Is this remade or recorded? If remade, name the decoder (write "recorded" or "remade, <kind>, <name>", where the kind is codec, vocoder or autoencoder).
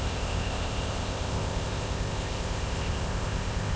remade, codec, ZipCodec